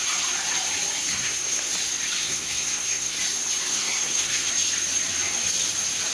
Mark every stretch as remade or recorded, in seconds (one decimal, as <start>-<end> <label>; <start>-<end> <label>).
0.0-1.1 recorded; 1.1-1.7 remade; 1.7-2.2 recorded; 2.2-3.2 remade; 3.2-3.7 recorded; 3.7-4.5 remade; 4.5-6.1 recorded